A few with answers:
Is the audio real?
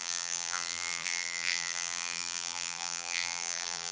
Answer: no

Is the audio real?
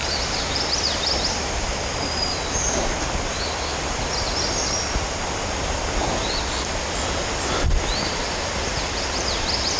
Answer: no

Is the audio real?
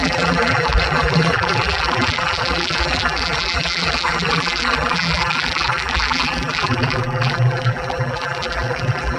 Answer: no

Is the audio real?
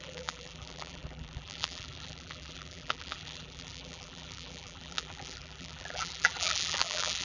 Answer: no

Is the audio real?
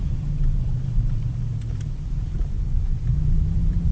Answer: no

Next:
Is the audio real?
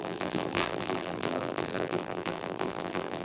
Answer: no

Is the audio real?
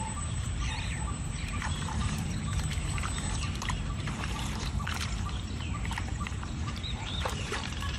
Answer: no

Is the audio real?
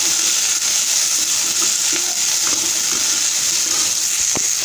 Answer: yes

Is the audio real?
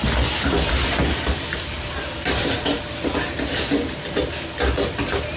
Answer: yes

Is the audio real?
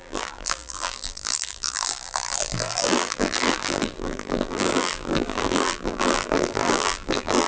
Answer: no